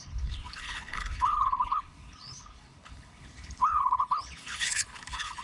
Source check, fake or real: fake